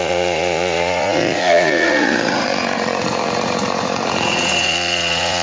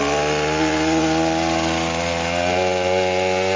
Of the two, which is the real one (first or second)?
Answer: second